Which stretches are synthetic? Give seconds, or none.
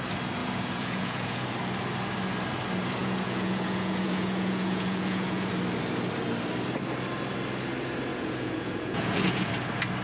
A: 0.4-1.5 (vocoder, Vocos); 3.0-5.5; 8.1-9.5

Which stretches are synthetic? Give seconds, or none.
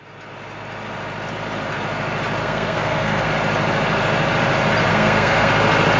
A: 2.4-3.3 (codec, SNAC); 4.9-5.5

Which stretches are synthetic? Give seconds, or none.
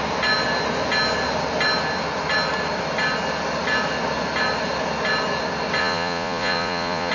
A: 5.8-7.1 (vocoder, Vocos)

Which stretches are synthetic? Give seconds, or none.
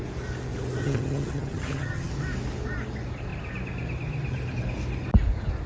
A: 0.8-2.1 (vocoder, HiFi-GAN)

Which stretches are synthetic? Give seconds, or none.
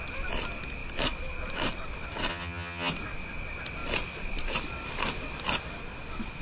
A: 2.3-2.9 (vocoder, HiFi-GAN)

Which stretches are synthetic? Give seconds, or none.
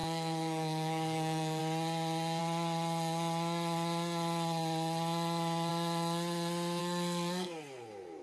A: 0.0-1.6 (codec, SNAC); 6.8-8.2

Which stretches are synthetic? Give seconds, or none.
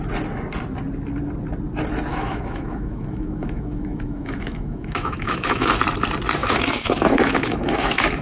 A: 2.1-5.8 (autoencoder, DAC-VAE); 6.4-8.2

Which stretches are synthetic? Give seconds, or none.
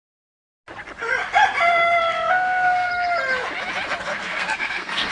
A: 2.3-2.9 (codec, SNAC); 4.1-5.1